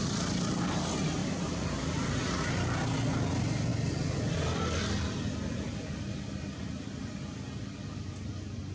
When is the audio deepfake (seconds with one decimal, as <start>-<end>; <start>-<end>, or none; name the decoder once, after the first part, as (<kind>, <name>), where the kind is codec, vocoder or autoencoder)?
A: none